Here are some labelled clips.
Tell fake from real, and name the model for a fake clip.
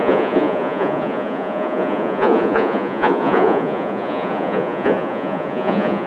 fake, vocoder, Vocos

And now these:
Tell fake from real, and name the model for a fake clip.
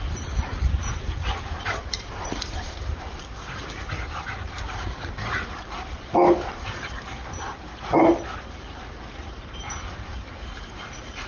fake, vocoder, BigVGAN v2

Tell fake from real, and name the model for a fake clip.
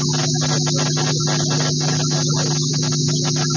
real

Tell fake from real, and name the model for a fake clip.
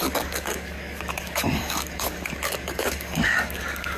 fake, codec, DAC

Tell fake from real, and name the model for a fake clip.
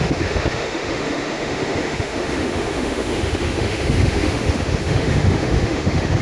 fake, autoencoder, DAC-VAE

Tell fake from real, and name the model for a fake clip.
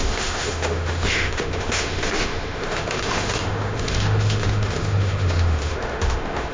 fake, autoencoder, DAC-VAE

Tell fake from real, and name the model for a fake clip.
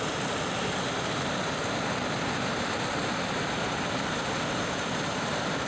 real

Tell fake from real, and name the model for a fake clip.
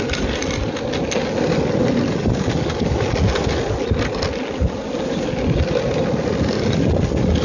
real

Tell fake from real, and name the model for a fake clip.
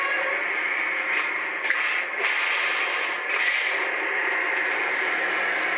real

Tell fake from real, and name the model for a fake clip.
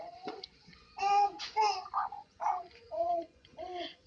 fake, vocoder, Vocos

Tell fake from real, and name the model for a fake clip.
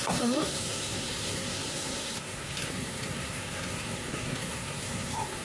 fake, codec, SNAC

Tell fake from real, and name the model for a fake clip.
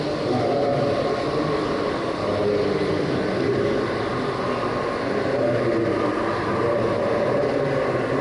real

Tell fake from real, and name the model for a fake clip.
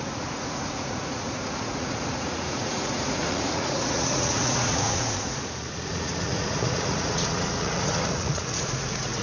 fake, vocoder, Vocos